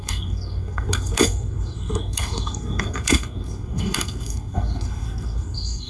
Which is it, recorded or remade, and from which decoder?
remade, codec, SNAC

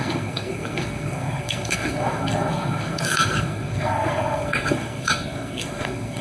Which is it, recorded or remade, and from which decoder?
remade, codec, SNAC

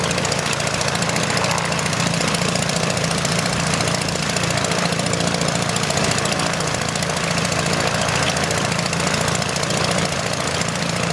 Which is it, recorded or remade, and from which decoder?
remade, vocoder, BigVGAN v2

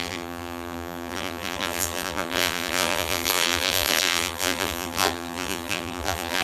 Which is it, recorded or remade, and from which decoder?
remade, vocoder, BigVGAN v2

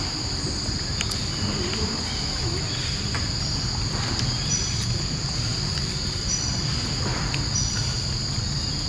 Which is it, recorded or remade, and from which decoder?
recorded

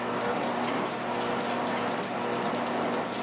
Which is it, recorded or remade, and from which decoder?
recorded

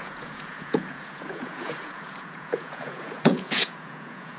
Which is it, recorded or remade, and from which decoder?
remade, vocoder, Vocos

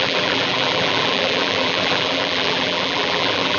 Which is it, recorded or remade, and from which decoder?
remade, vocoder, BigVGAN v2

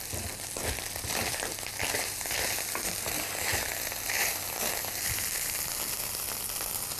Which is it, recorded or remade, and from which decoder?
recorded